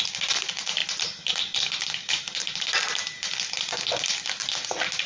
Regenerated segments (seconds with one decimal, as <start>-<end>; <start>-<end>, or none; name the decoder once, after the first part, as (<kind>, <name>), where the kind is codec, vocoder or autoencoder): none